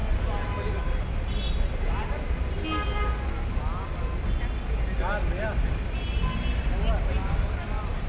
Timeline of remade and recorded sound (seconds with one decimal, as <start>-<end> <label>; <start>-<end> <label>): 0.0-8.1 recorded